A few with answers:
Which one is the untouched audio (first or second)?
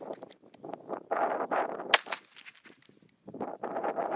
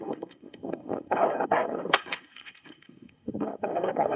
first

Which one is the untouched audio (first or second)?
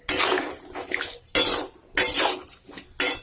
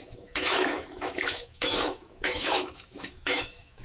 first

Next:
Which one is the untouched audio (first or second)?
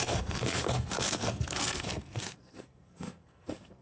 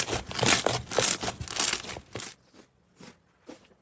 second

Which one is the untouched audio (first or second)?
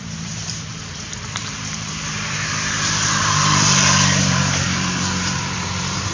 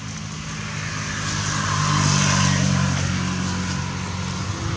second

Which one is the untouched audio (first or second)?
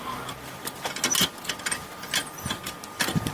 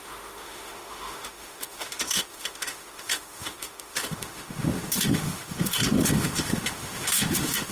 first